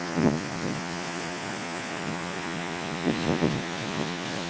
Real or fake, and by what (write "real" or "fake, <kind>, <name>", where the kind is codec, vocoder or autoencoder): fake, vocoder, Vocos